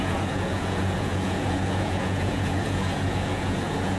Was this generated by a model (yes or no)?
yes